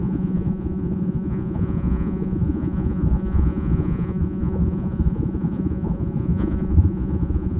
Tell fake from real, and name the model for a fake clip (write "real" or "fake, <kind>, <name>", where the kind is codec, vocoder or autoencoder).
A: fake, vocoder, Vocos